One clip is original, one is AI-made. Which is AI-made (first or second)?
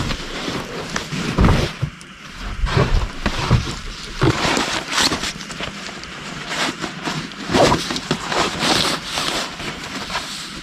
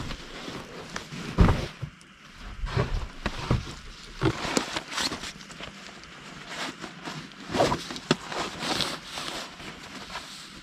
first